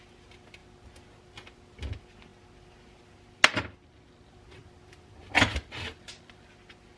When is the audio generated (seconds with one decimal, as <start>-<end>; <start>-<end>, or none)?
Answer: none

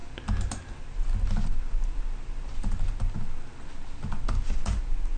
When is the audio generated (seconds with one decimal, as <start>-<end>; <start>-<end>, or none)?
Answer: none

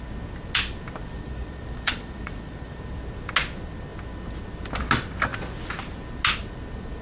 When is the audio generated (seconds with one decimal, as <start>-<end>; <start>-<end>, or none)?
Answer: 1.0-2.8

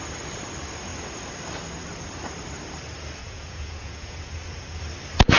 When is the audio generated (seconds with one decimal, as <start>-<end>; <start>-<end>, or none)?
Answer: 3.2-4.8

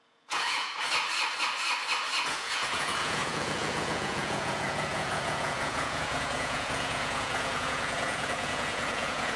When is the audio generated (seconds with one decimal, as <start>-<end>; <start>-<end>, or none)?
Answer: 0.0-0.7; 2.2-9.4

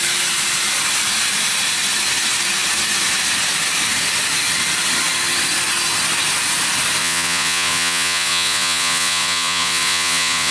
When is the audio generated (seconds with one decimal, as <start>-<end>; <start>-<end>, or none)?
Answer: 7.0-10.5

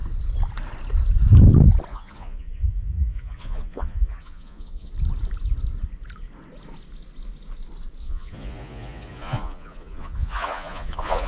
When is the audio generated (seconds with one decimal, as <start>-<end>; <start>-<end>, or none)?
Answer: 1.9-4.9; 8.0-11.3

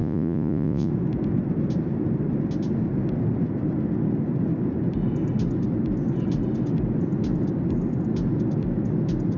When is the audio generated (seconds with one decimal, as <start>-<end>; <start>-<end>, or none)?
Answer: 0.0-0.9